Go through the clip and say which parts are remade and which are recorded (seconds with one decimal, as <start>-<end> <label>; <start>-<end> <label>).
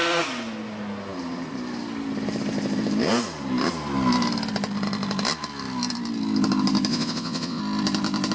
0.0-6.9 recorded; 6.9-7.6 remade; 7.6-8.3 recorded